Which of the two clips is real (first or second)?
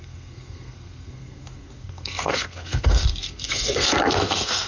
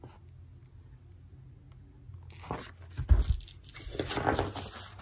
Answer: second